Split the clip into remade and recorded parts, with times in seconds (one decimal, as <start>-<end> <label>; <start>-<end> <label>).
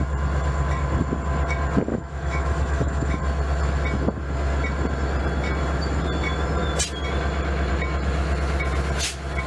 0.0-1.9 recorded; 1.9-3.2 remade; 3.2-9.5 recorded